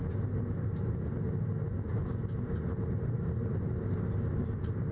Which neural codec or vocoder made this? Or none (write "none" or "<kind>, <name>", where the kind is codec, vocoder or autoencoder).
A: none